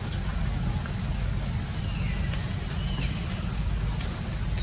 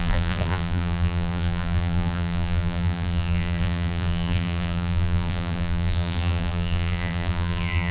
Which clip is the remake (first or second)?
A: second